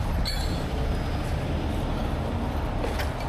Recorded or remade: recorded